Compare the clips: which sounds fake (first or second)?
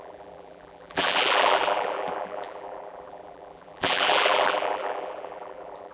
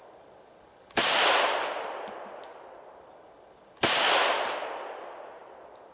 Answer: first